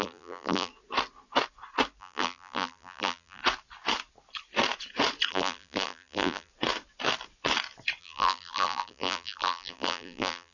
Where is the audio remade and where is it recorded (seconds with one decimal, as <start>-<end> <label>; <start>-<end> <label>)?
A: 0.0-0.7 remade; 0.7-2.0 recorded; 2.0-3.4 remade; 3.4-5.3 recorded; 5.3-6.5 remade; 6.5-8.0 recorded; 8.0-10.5 remade